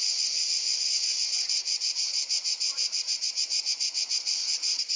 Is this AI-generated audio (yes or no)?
yes